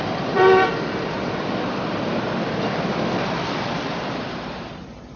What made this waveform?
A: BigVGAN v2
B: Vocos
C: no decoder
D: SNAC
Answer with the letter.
A